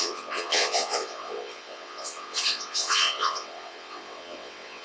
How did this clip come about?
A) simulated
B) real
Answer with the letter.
A